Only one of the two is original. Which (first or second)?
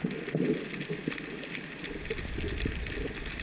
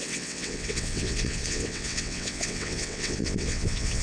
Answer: first